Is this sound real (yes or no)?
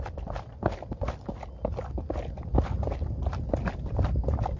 yes